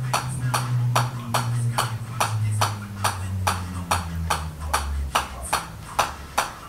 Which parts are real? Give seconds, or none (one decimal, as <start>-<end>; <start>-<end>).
0.0-1.3; 2.0-6.7